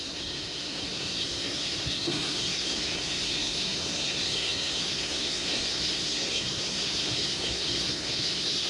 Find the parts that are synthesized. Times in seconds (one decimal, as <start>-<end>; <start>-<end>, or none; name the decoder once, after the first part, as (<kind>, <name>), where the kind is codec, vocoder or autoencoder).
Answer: 0.0-8.7 (codec, SNAC)